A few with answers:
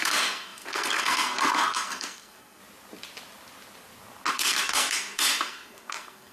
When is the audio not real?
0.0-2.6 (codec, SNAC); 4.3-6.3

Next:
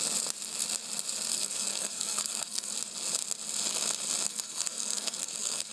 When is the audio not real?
1.3-2.7 (codec, SNAC); 4.3-5.7

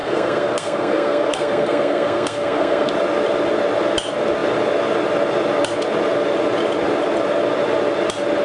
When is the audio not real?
0.0-2.9 (codec, SNAC)

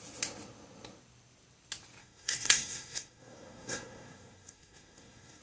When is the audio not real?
2.0-5.4 (codec, SNAC)

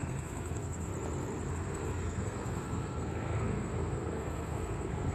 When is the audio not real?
0.0-0.9 (codec, SNAC); 1.5-5.1

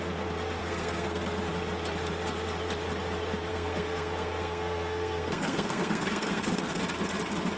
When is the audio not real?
0.6-1.5 (codec, SNAC); 3.5-6.8

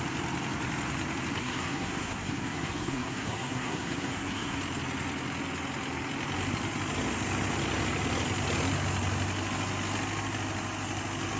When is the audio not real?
1.4-4.6 (codec, SNAC)

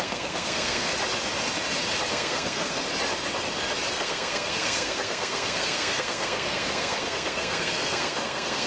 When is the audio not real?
0.0-0.9 (codec, SNAC); 2.1-2.8; 3.9-8.7